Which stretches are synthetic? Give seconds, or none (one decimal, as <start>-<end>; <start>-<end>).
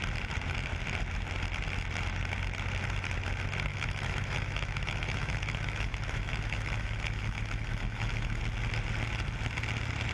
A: 3.7-8.4